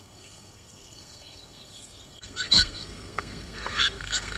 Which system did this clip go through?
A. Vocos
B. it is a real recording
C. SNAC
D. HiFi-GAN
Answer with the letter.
C